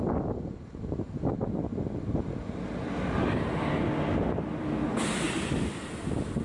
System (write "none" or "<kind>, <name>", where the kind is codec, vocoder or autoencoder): none